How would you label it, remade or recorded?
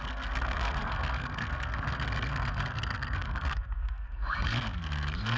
remade